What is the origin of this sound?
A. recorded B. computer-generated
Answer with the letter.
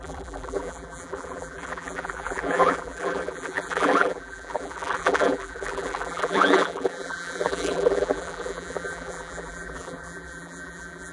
B